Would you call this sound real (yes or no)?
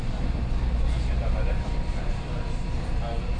yes